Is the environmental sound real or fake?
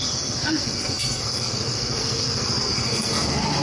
fake